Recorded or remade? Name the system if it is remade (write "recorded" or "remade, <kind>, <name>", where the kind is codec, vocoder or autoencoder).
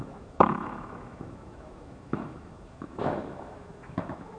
remade, autoencoder, DAC-VAE